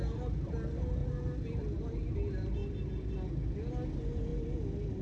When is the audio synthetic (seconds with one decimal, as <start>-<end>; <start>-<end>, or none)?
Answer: 1.0-2.1